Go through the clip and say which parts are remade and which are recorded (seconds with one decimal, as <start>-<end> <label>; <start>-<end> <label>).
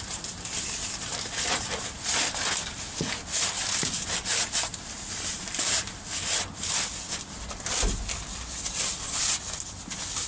0.0-4.7 recorded; 4.7-5.8 remade; 5.8-10.3 recorded